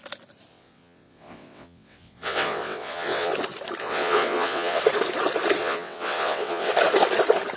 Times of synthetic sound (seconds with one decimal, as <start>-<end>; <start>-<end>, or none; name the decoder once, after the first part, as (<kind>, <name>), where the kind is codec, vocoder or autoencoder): 0.5-3.3 (vocoder, WaveNeXt); 3.8-4.8; 5.6-6.7